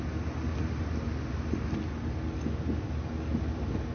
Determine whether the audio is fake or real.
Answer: real